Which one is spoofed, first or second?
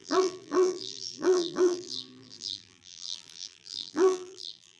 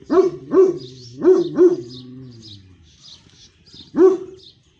first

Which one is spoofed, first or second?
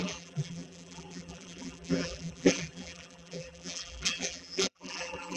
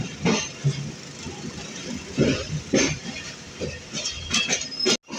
first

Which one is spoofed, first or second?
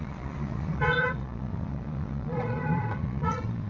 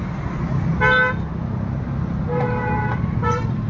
first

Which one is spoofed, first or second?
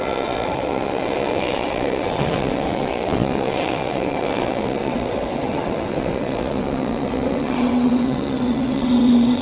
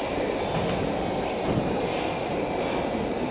first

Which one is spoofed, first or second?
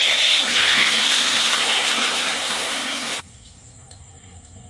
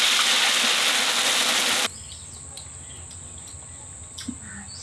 first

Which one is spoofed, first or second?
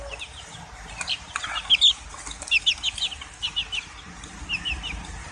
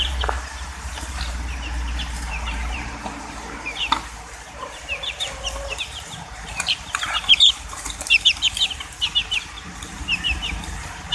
second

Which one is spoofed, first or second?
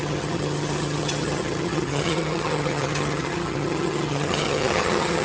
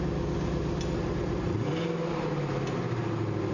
first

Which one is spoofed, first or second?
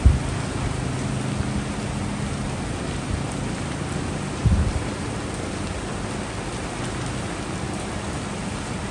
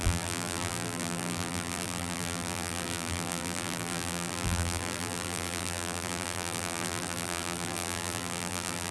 second